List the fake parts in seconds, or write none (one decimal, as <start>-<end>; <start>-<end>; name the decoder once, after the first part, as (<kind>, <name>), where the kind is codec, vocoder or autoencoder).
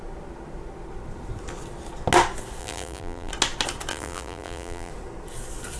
2.6-3.3 (vocoder, BigVGAN v2); 3.9-4.9